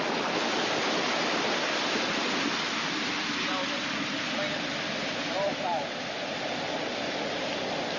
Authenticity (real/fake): real